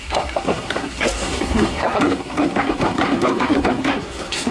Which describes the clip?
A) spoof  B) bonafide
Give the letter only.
A